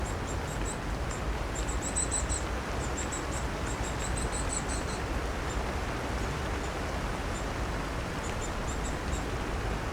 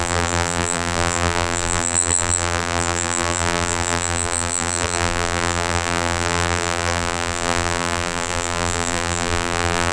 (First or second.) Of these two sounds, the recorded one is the first